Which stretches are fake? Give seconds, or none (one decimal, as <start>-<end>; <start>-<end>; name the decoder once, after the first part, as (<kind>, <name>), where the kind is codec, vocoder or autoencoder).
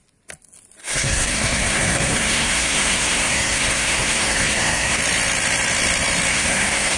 0.8-5.0 (codec, SNAC); 6.3-7.0